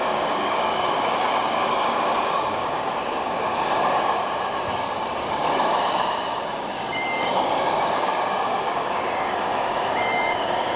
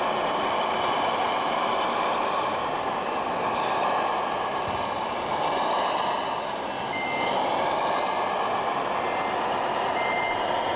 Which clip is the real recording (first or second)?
second